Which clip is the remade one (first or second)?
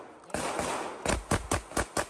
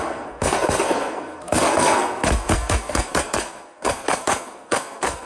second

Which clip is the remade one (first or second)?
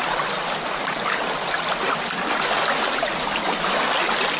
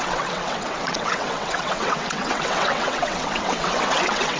second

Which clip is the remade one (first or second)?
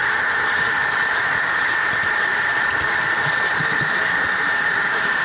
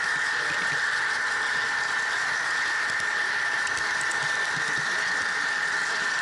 first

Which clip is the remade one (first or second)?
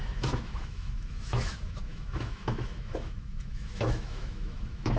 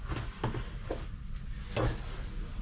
first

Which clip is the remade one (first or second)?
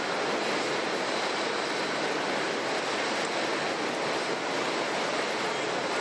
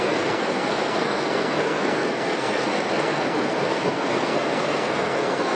second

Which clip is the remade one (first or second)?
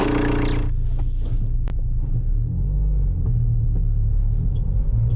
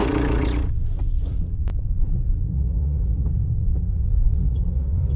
second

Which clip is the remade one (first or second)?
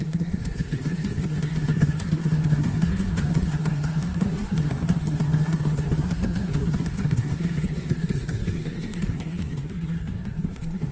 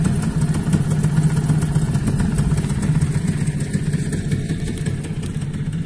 first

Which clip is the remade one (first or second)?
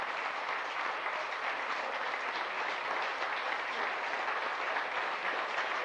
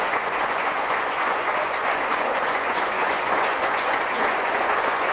second